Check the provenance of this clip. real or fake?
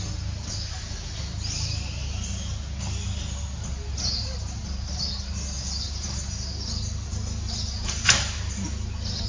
real